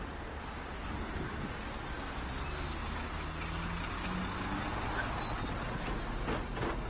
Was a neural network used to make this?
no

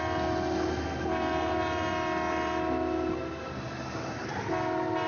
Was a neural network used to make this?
no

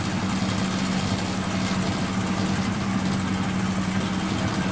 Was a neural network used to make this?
no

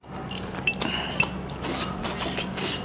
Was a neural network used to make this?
no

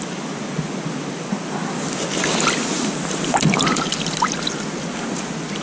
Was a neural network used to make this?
no